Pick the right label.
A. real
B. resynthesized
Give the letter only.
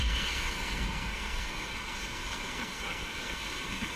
B